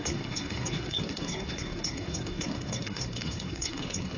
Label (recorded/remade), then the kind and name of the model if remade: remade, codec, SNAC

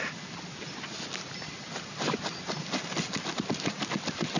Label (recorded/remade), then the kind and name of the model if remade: recorded